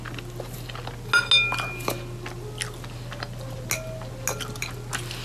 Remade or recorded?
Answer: recorded